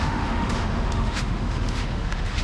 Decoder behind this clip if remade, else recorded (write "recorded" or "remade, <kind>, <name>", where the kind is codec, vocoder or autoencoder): remade, autoencoder, DAC-VAE